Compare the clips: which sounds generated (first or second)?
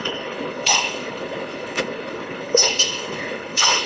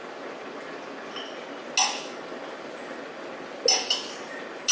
first